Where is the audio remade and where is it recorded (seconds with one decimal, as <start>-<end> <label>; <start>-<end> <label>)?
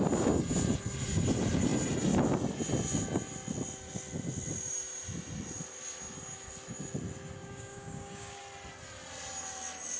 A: 0.0-7.4 recorded; 7.4-8.4 remade; 8.4-10.0 recorded